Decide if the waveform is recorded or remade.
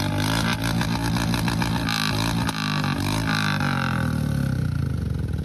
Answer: recorded